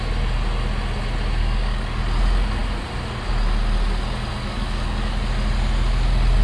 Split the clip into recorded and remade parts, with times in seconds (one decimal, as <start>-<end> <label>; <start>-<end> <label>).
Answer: 0.0-1.4 recorded; 1.4-2.0 remade; 2.0-4.4 recorded; 4.4-5.3 remade; 5.3-6.4 recorded